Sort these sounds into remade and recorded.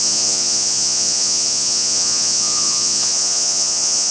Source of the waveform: remade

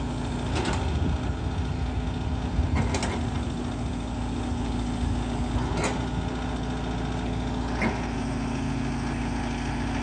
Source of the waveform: recorded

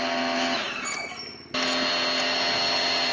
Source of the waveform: recorded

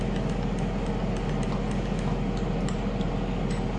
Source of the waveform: recorded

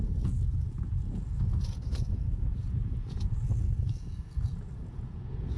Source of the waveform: remade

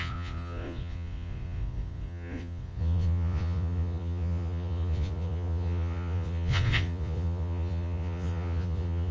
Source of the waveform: remade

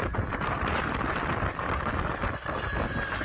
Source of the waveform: recorded